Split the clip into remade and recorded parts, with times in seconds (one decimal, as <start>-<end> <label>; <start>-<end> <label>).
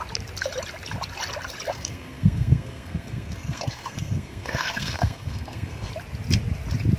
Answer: 0.0-1.7 recorded; 1.7-5.9 remade; 5.9-7.0 recorded